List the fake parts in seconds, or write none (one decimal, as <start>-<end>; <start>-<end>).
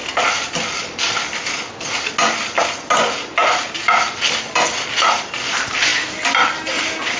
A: none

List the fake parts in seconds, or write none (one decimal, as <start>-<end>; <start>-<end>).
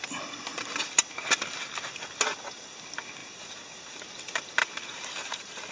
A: 3.2-4.0; 4.6-5.7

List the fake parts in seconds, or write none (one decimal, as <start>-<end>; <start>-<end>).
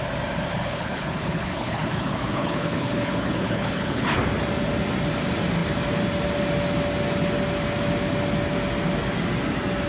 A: 0.5-4.2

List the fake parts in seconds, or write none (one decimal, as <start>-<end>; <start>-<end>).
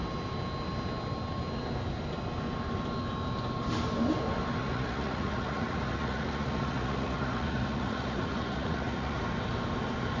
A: 4.6-9.2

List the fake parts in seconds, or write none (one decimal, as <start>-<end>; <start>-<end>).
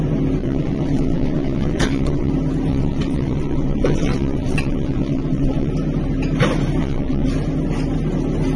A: 0.4-2.3; 2.7-5.7; 6.8-7.3